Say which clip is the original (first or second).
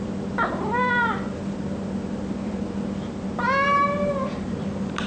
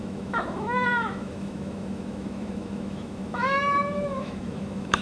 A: first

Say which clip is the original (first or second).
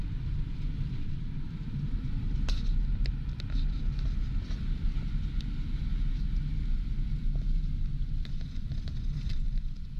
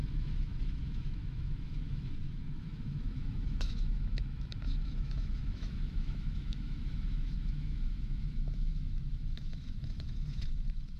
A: first